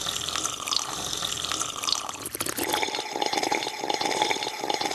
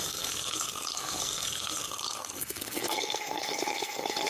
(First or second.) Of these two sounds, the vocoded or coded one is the second